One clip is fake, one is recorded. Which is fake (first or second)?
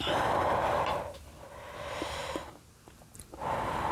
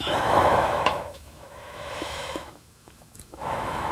second